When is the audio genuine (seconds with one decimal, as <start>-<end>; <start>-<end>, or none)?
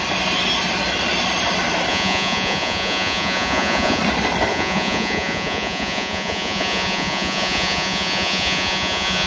0.0-1.9; 4.0-4.5